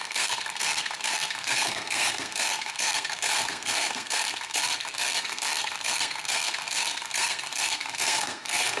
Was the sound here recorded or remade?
remade